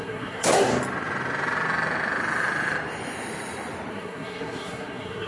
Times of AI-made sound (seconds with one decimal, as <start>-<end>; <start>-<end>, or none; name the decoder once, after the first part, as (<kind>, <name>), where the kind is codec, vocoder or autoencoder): 0.0-0.7 (codec, SNAC); 3.9-5.3